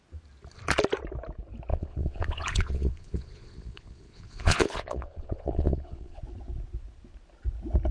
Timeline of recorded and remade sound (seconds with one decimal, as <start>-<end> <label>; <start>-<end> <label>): 0.0-1.7 recorded; 1.7-6.2 remade; 6.2-7.9 recorded